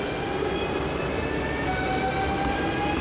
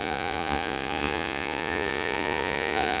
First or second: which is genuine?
first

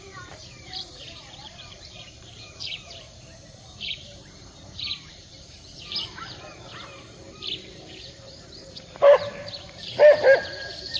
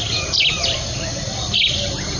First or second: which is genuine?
second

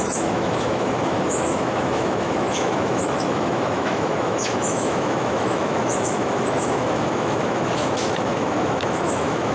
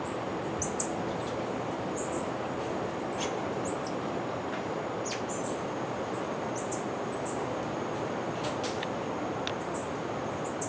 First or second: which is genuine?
second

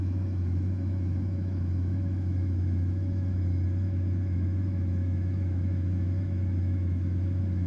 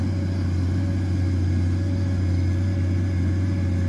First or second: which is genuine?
second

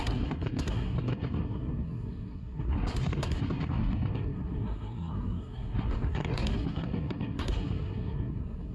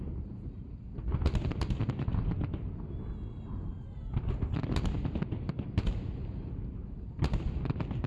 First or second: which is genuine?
second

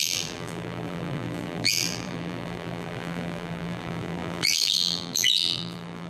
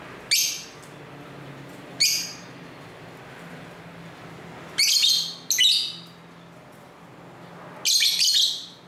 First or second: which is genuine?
second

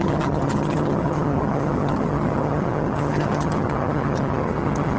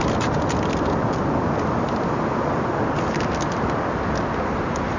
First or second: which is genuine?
second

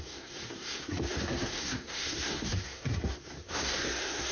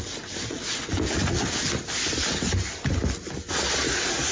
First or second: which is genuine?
second